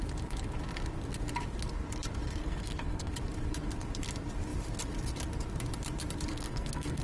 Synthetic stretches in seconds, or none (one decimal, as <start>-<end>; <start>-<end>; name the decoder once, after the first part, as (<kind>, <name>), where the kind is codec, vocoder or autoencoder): 2.4-3.1 (codec, SNAC); 6.3-7.0